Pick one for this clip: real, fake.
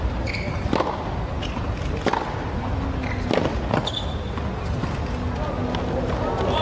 real